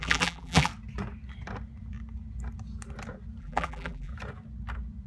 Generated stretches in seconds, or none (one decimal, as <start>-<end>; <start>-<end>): 0.0-0.7; 3.4-4.1